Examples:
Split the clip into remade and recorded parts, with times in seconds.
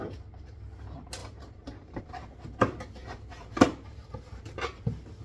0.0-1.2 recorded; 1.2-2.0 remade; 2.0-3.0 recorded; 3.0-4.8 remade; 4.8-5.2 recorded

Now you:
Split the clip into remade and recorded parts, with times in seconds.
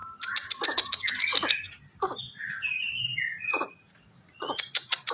0.0-3.1 recorded; 3.1-5.1 remade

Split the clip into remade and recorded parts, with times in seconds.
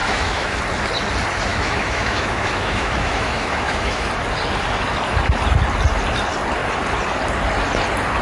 0.0-0.6 remade; 0.6-1.5 recorded; 1.5-4.1 remade; 4.1-8.2 recorded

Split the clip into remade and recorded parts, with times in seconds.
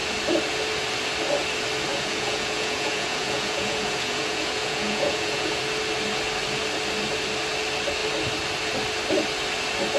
0.0-1.9 recorded; 1.9-5.6 remade; 5.6-10.0 recorded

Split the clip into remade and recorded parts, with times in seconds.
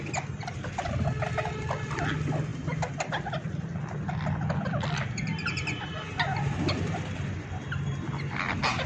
0.0-8.9 recorded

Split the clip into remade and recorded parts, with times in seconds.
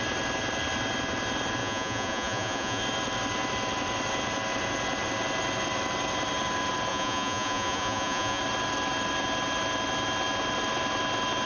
0.0-1.6 recorded; 1.6-2.8 remade; 2.8-6.9 recorded; 6.9-8.4 remade; 8.4-11.5 recorded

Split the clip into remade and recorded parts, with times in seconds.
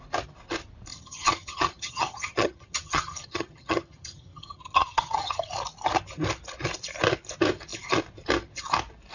0.0-0.9 recorded; 0.9-5.5 remade; 5.5-9.1 recorded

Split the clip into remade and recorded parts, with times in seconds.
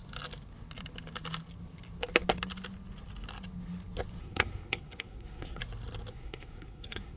0.0-4.2 recorded; 4.2-5.6 remade; 5.6-6.1 recorded; 6.1-7.2 remade